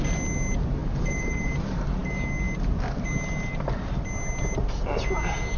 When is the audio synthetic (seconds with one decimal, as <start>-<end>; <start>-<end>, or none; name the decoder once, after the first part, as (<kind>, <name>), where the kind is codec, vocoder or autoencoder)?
0.8-1.6 (vocoder, BigVGAN v2)